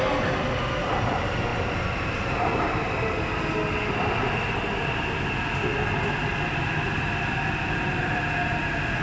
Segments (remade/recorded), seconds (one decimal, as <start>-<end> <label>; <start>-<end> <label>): 0.0-9.0 recorded